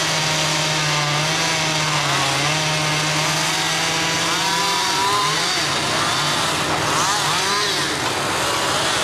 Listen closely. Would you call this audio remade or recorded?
recorded